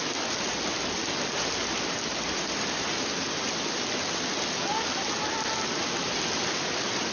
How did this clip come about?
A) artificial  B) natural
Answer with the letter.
B